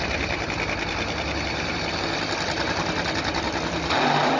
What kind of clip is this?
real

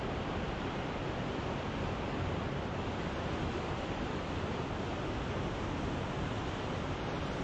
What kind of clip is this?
real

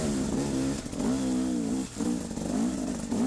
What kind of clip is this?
real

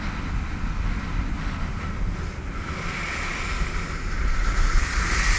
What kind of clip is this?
real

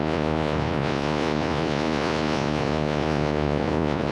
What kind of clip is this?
fake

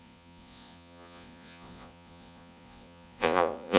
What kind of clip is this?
fake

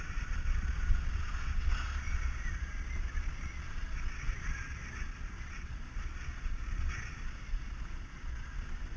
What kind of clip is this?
fake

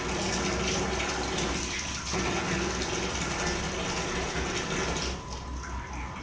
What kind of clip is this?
real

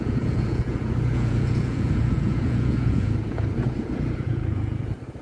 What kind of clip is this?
fake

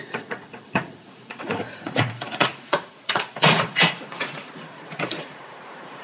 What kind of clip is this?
fake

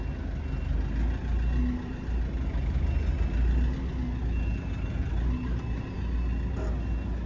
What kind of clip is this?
real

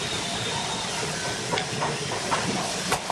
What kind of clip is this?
real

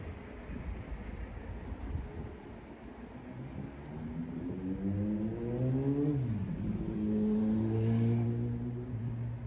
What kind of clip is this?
real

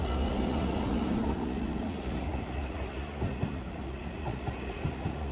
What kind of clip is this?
fake